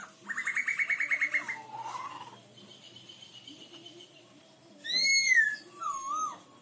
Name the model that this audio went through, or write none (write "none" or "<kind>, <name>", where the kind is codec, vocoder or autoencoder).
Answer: none